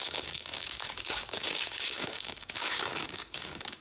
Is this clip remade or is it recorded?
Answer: remade